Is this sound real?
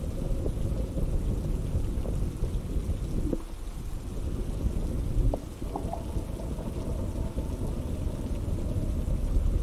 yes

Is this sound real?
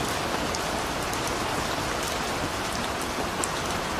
yes